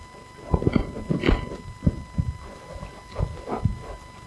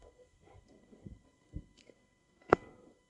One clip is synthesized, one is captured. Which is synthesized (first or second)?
second